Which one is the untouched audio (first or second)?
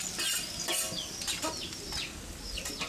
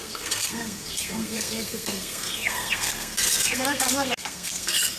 first